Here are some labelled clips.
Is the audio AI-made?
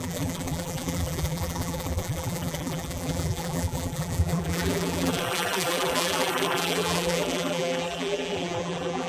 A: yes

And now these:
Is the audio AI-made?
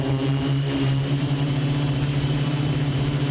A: yes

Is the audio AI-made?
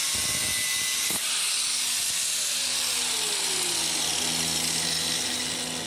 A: no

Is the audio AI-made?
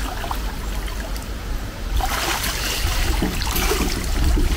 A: yes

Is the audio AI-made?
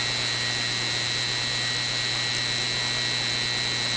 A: no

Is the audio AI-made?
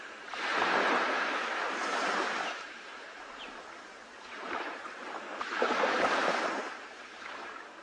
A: yes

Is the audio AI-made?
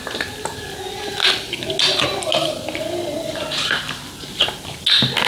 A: no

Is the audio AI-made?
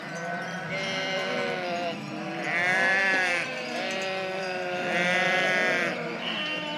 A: yes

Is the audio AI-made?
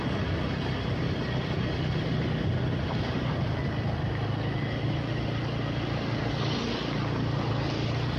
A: no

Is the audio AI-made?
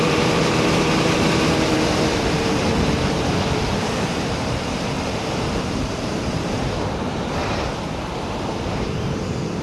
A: yes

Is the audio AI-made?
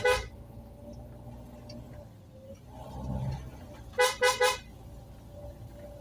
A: no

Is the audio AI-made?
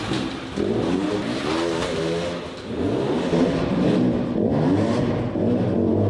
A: no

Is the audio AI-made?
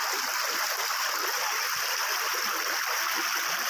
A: no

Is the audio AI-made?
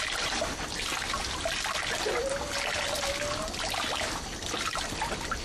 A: no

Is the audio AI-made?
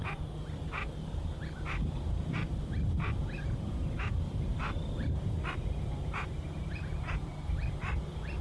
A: yes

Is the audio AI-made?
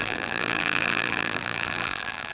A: yes